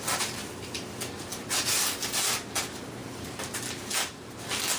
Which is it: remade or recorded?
recorded